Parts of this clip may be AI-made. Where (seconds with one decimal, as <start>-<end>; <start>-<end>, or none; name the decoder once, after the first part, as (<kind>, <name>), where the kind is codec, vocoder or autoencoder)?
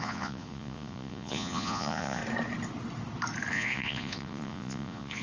0.0-2.2 (vocoder, Vocos); 3.5-5.2